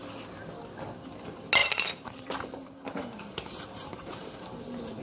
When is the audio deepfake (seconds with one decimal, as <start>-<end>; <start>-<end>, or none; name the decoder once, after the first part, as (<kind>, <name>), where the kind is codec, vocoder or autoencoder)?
1.6-4.6 (vocoder, BigVGAN v2)